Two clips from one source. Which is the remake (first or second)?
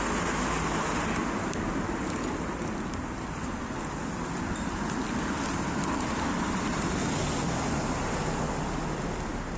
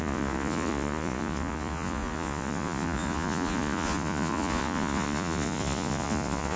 second